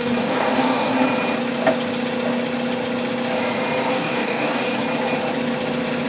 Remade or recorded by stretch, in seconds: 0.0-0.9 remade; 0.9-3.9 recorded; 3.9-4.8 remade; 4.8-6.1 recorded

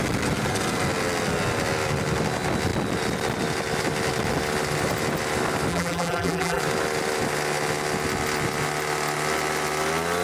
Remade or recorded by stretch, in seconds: 0.0-5.7 recorded; 5.7-6.6 remade; 6.6-10.2 recorded

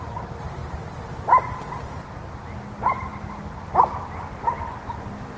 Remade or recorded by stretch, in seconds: 0.0-0.6 recorded; 0.6-1.4 remade; 1.4-5.4 recorded

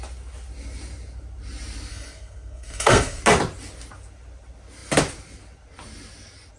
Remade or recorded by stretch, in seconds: 0.0-1.9 recorded; 1.9-3.2 remade; 3.2-6.6 recorded

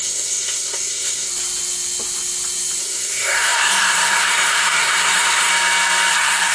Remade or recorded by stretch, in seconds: 0.0-1.3 remade; 1.3-2.8 recorded; 2.8-5.5 remade; 5.5-6.1 recorded; 6.1-6.5 remade